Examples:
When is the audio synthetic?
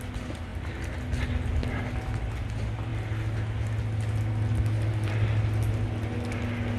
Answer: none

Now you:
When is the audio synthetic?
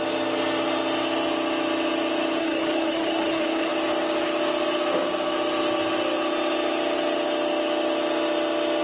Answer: 2.4-3.7 (autoencoder, DAC-VAE)